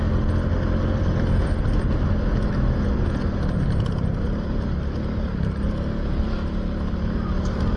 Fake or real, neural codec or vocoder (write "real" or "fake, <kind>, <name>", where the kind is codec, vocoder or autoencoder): real